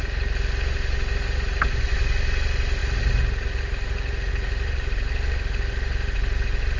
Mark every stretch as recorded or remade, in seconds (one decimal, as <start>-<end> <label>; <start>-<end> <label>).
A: 0.0-6.8 recorded